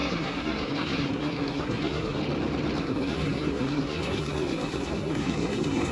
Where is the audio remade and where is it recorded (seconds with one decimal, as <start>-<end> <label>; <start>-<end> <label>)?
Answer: 0.0-2.2 remade; 2.2-2.8 recorded; 2.8-5.9 remade